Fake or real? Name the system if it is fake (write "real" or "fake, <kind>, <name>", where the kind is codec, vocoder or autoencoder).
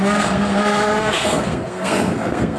fake, codec, SNAC